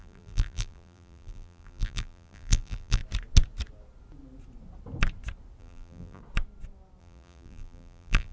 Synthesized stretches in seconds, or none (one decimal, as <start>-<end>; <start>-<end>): 0.0-3.0; 5.6-6.2; 7.0-8.3